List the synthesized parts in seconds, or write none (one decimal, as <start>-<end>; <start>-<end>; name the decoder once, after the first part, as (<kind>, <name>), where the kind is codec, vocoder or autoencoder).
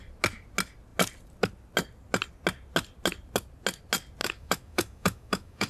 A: 4.2-5.7 (autoencoder, DAC-VAE)